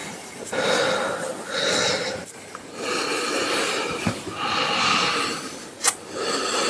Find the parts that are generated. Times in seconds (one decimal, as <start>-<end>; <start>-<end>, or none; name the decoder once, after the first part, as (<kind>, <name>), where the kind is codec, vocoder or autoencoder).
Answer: none